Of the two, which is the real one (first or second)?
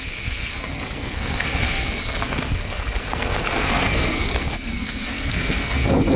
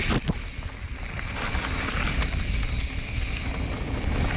second